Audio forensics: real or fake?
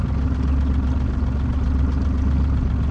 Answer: real